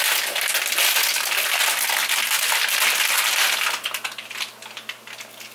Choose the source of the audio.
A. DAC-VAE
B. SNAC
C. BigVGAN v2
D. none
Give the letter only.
D